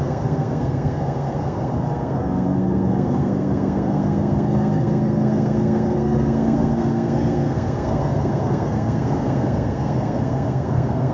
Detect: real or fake fake